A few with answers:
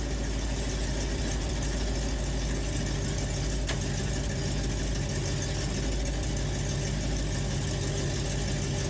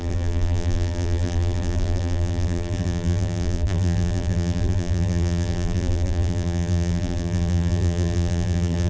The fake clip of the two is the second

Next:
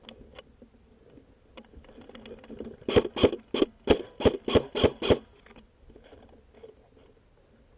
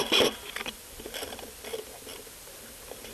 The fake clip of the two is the second